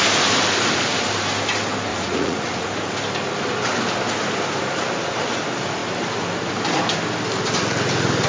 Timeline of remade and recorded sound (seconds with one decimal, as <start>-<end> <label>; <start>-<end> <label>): 0.0-1.9 recorded; 1.9-2.7 remade; 2.7-8.3 recorded